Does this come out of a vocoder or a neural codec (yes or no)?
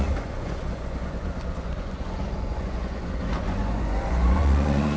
yes